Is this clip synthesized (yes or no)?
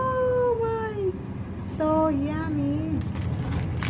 no